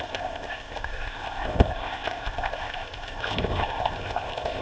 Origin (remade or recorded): remade